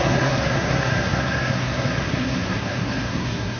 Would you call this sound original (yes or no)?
no